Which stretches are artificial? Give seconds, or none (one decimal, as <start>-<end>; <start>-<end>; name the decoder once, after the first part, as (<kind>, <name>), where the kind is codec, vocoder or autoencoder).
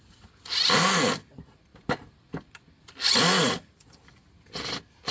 none